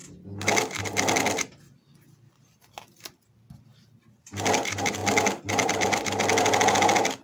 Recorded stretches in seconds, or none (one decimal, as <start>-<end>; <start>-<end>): 0.0-3.7; 4.6-7.2